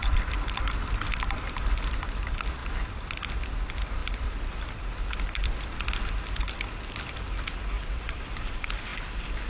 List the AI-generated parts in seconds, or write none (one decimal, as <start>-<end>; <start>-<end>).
0.0-8.9